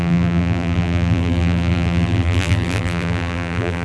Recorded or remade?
remade